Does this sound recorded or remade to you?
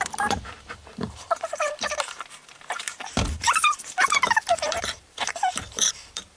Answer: remade